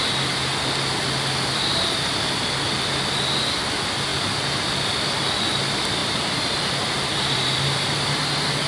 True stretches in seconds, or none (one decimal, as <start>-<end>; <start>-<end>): 0.0-4.1; 5.0-6.0; 6.7-8.7